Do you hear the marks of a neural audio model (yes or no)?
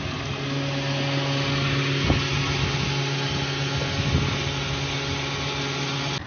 no